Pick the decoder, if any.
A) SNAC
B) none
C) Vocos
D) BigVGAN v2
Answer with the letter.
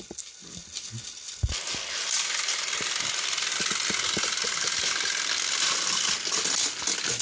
B